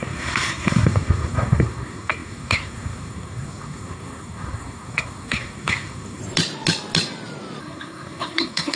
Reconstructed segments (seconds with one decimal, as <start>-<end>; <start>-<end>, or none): 0.0-6.2; 7.6-8.8